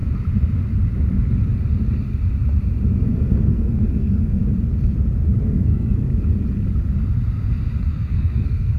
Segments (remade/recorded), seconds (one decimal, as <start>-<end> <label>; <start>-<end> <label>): 0.0-3.1 recorded; 3.1-4.4 remade; 4.4-5.4 recorded; 5.4-6.1 remade; 6.1-7.8 recorded; 7.8-8.8 remade